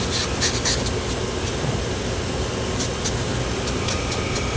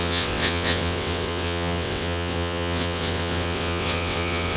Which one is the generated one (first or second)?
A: second